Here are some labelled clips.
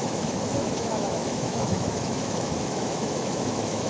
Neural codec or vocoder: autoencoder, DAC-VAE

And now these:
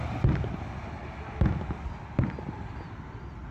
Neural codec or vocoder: none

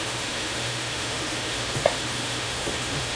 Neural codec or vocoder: autoencoder, DAC-VAE